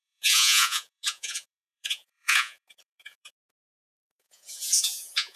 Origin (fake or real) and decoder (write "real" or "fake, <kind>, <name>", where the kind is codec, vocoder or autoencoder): fake, vocoder, Vocos